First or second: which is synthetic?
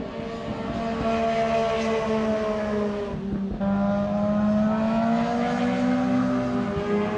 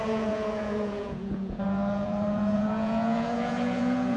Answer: second